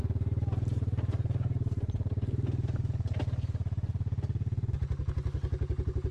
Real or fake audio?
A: real